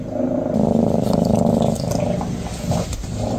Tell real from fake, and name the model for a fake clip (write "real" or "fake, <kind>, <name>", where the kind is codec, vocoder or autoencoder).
real